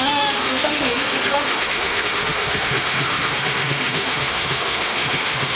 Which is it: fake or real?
fake